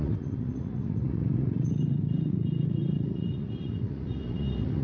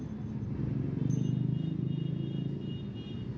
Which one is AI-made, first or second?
first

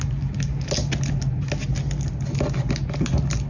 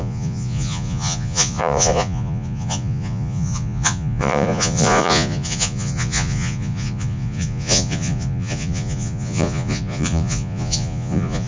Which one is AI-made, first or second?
second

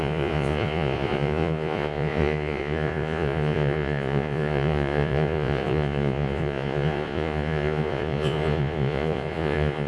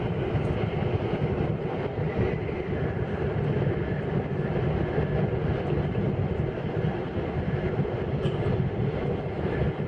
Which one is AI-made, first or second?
first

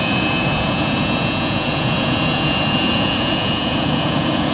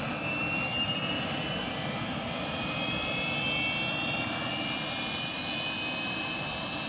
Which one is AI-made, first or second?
first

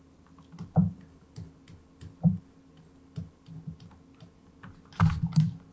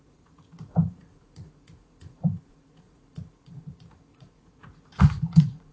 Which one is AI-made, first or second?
second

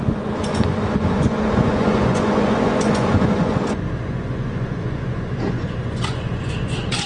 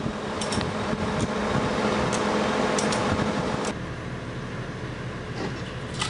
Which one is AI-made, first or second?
first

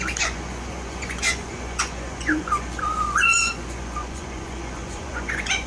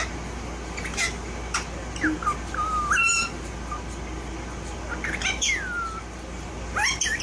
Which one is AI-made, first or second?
first